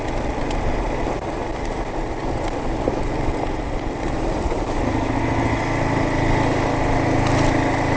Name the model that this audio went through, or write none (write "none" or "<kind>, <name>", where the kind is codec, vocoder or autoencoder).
none